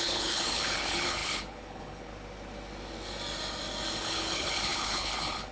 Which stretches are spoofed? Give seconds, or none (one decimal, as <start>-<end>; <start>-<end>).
0.0-2.1; 4.0-5.5

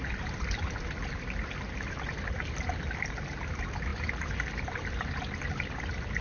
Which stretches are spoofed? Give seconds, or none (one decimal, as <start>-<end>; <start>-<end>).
none

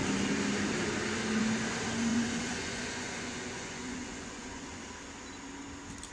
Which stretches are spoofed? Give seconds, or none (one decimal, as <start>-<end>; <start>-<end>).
2.1-4.8

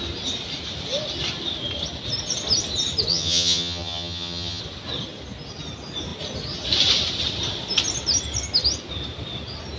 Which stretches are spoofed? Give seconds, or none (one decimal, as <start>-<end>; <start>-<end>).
3.1-4.6

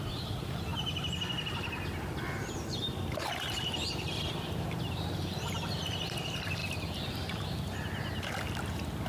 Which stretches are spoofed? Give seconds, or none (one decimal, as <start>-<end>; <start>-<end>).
0.7-5.9